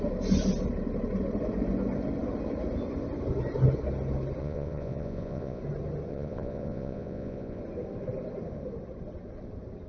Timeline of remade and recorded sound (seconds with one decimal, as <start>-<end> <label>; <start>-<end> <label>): 0.0-4.4 recorded; 4.4-5.6 remade; 5.6-6.1 recorded; 6.1-7.6 remade; 7.6-9.9 recorded